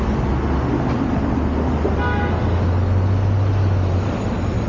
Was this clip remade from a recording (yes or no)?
no